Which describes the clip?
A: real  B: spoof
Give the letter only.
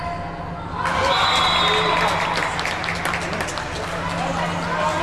A